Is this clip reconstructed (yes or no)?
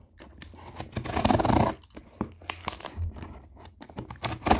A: no